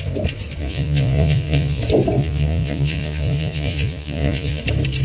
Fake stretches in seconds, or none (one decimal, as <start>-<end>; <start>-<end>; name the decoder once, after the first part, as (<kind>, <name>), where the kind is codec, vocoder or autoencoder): 0.6-1.8 (vocoder, Vocos); 2.2-4.6